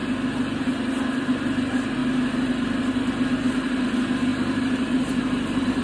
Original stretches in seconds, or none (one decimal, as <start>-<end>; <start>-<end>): 0.0-5.8